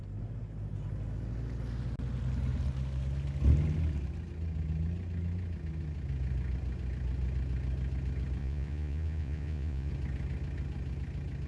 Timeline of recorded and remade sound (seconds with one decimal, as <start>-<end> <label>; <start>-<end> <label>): 0.0-8.4 recorded; 8.4-9.9 remade; 9.9-11.5 recorded